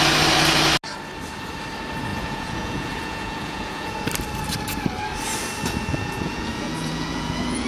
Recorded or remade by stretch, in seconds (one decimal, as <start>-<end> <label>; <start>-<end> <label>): 0.0-2.1 recorded; 2.1-4.0 remade; 4.0-5.9 recorded; 5.9-7.7 remade